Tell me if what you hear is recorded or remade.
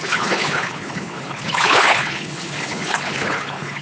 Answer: remade